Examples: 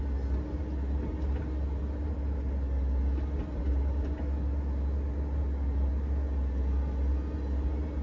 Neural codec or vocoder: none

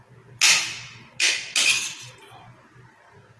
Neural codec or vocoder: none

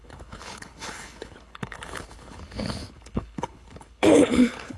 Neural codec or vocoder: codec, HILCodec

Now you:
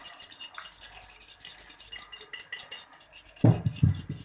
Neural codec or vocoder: none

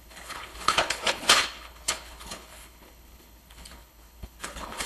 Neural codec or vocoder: codec, HILCodec